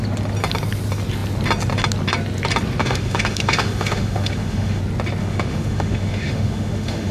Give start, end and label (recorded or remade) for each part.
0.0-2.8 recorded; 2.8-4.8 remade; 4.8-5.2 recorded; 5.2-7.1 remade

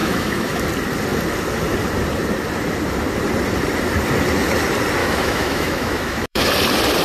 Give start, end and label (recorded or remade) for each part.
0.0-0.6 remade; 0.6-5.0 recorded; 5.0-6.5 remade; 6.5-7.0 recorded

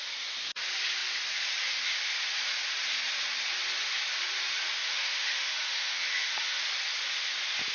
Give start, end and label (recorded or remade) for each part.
0.0-4.8 recorded; 4.8-6.6 remade; 6.6-7.7 recorded

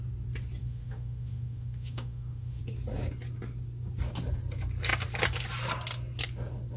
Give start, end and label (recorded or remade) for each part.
0.0-0.6 recorded; 0.6-2.6 remade; 2.6-6.8 recorded